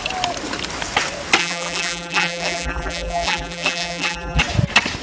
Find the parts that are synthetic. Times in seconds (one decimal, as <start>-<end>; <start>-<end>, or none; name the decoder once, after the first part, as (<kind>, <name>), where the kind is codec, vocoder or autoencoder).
1.4-4.4 (vocoder, BigVGAN v2)